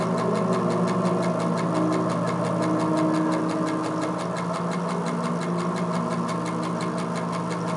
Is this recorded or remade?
recorded